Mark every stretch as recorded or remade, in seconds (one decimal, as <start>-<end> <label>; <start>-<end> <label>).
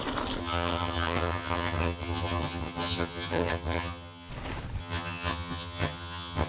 0.0-0.4 recorded; 0.4-4.3 remade; 4.3-4.8 recorded; 4.8-6.5 remade